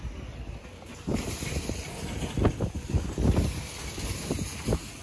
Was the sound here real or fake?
real